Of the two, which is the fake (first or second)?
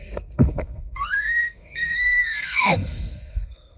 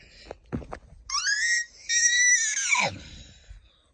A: first